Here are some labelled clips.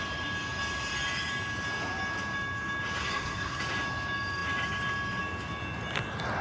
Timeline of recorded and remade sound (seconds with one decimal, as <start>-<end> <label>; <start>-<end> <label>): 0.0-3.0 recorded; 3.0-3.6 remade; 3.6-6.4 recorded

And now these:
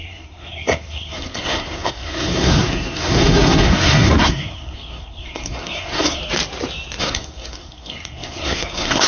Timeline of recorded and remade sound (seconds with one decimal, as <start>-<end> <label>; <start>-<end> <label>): 0.0-6.2 remade; 6.2-7.0 recorded; 7.0-9.1 remade

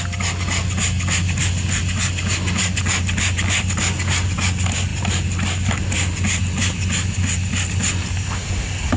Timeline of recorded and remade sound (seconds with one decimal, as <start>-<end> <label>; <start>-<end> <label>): 0.0-9.0 recorded